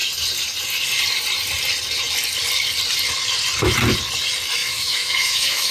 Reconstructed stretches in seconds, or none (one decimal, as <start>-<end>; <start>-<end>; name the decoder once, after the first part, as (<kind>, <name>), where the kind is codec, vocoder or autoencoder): 4.6-5.7 (autoencoder, DAC-VAE)